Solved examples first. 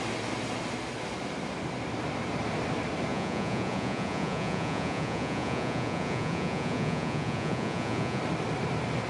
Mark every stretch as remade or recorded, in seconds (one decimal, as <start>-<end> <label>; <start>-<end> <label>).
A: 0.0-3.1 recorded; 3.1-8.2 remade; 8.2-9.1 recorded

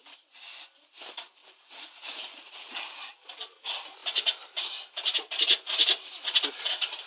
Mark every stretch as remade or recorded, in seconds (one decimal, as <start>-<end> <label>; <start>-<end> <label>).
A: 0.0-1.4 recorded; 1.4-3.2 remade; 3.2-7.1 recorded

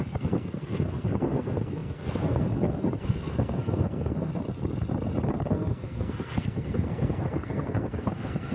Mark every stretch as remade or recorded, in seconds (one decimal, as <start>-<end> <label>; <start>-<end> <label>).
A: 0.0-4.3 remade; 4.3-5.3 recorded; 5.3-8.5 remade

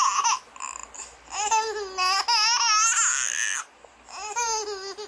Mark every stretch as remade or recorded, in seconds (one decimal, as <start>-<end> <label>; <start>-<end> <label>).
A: 0.0-5.1 recorded

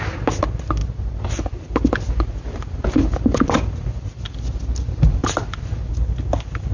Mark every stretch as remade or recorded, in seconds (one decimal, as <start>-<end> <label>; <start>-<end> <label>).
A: 0.0-6.7 recorded

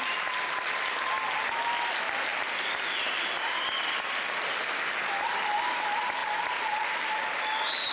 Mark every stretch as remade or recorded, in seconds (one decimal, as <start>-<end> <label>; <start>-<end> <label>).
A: 0.0-7.9 recorded